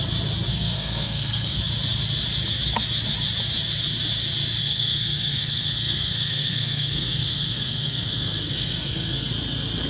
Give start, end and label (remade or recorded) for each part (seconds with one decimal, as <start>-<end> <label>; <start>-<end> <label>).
0.0-0.5 recorded; 0.5-1.6 remade; 1.6-4.6 recorded; 4.6-9.3 remade; 9.3-9.9 recorded